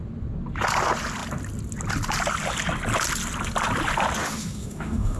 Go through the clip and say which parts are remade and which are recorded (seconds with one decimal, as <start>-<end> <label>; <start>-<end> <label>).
0.0-4.2 recorded; 4.2-5.2 remade